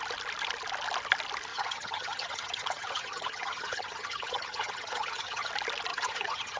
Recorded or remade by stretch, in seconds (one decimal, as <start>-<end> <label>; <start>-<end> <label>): 0.0-1.5 recorded; 1.5-5.5 remade; 5.5-5.9 recorded; 5.9-6.6 remade